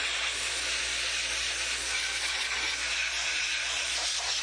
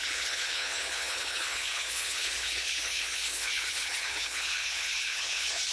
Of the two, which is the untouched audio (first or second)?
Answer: first